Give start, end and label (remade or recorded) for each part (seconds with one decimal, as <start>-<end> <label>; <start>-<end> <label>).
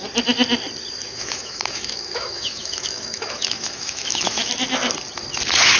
0.0-1.0 recorded; 1.0-4.5 remade; 4.5-5.8 recorded